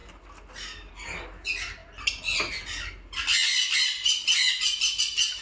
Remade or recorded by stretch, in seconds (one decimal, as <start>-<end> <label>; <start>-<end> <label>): 0.0-5.4 recorded